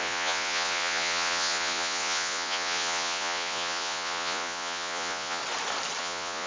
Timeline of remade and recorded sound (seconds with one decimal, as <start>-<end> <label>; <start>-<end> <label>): 0.0-5.4 remade; 5.4-6.0 recorded; 6.0-6.5 remade